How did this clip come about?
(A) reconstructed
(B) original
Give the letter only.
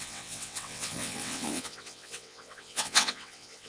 A